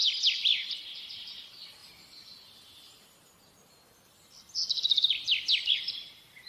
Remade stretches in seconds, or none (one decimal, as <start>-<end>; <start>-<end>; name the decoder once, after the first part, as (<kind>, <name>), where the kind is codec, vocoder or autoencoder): 0.0-1.8 (vocoder, BigVGAN v2); 5.7-6.5